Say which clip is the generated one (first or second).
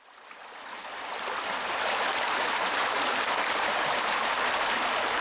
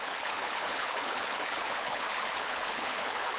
second